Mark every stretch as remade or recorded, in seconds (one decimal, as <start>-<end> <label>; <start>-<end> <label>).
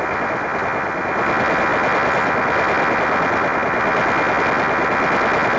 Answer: 0.0-5.6 recorded